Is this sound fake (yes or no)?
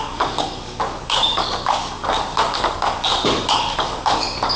yes